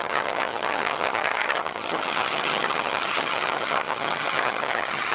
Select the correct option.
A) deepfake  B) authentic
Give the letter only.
A